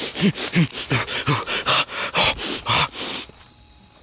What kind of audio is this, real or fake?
real